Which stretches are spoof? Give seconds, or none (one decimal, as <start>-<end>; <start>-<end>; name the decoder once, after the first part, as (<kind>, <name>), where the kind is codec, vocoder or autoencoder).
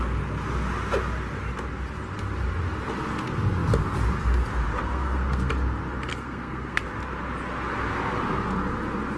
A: 4.8-5.5 (codec, SNAC); 6.1-6.8